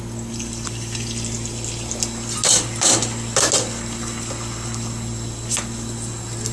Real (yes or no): yes